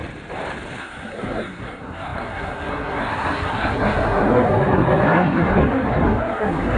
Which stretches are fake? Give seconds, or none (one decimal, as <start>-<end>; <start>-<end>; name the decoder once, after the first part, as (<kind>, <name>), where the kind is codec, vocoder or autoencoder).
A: 0.8-6.8 (codec, SNAC)